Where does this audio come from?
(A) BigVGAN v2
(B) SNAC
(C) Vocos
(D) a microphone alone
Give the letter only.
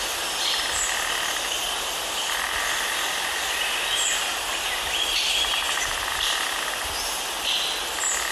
D